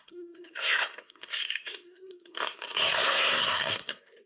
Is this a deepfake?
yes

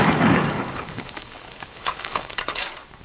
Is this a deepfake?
yes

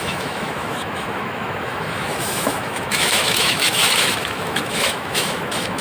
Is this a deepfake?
yes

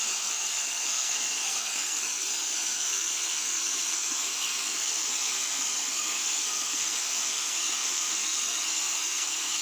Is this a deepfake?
yes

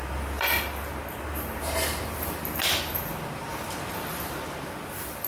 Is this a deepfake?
no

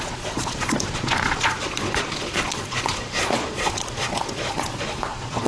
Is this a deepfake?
yes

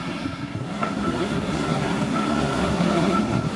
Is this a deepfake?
yes